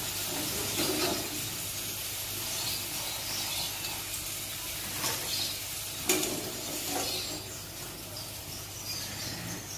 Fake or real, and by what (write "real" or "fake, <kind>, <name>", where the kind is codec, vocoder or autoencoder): real